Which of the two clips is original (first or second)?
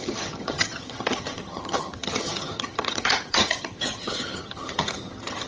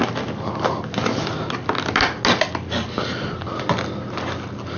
second